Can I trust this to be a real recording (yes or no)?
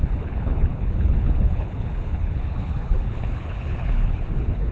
no